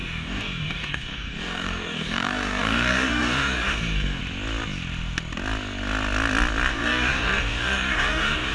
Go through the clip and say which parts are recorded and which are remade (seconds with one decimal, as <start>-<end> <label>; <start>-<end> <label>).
0.0-4.2 remade; 4.2-6.7 recorded; 6.7-8.5 remade